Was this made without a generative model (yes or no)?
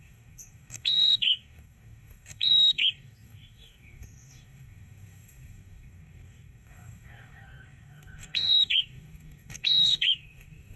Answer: no